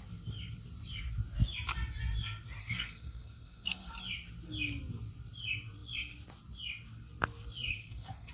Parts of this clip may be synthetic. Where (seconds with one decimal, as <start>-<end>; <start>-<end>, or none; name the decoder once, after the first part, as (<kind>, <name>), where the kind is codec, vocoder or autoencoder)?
2.6-3.9 (codec, SNAC); 7.7-8.3